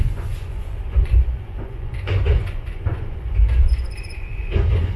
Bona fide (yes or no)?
no